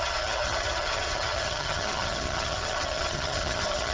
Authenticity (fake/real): fake